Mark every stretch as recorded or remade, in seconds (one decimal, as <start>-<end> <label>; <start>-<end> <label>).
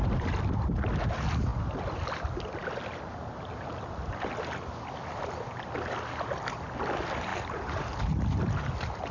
0.0-7.3 recorded; 7.3-8.0 remade; 8.0-9.1 recorded